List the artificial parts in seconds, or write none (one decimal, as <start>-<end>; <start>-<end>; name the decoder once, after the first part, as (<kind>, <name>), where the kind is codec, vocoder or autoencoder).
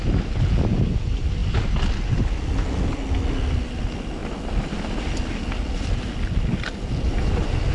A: none